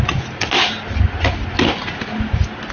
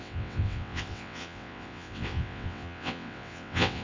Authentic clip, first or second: first